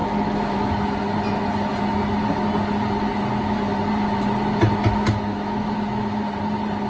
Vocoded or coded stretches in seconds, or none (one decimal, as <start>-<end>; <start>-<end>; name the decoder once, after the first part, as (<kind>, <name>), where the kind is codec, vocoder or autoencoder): 0.0-0.8 (autoencoder, DAC-VAE); 5.3-6.2